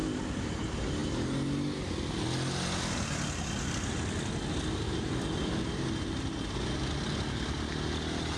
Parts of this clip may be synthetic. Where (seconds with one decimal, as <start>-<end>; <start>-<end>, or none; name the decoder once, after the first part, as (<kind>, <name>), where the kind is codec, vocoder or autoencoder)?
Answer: none